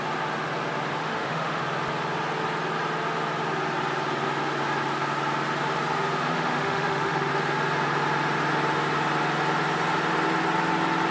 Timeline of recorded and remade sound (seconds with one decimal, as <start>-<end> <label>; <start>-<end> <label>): 0.0-1.0 recorded; 1.0-1.6 remade; 1.6-6.3 recorded; 6.3-7.3 remade; 7.3-11.1 recorded

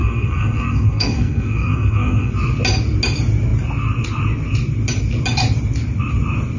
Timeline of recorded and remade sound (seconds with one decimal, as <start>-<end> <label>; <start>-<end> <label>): 0.0-2.3 remade; 2.3-6.6 recorded

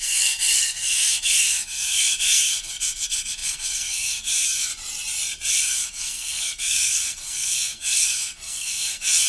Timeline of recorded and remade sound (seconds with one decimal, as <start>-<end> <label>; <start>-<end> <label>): 0.0-4.7 remade; 4.7-5.5 recorded; 5.5-9.3 remade

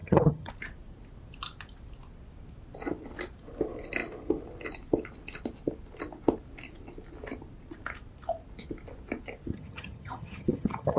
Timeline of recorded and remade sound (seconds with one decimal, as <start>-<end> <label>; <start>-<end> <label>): 0.0-0.5 remade; 0.5-9.5 recorded; 9.5-11.0 remade

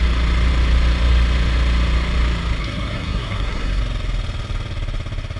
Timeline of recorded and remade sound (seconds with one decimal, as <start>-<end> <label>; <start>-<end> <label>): 0.0-2.6 recorded; 2.6-3.8 remade; 3.8-5.4 recorded

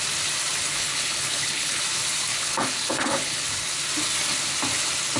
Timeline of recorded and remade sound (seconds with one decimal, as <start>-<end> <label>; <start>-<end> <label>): 0.0-0.7 recorded; 0.7-1.8 remade; 1.8-2.3 recorded; 2.3-3.6 remade; 3.6-5.2 recorded